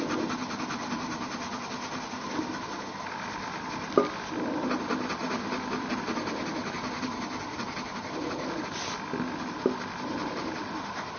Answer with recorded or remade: recorded